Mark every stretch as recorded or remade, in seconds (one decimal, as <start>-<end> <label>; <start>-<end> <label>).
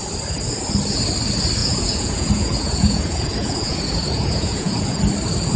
0.0-1.6 recorded; 1.6-5.0 remade; 5.0-5.6 recorded